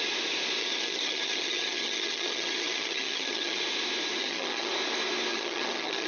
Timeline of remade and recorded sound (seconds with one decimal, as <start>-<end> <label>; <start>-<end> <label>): 0.0-0.6 recorded; 0.6-3.6 remade; 3.6-4.2 recorded; 4.2-4.7 remade; 4.7-5.3 recorded; 5.3-6.1 remade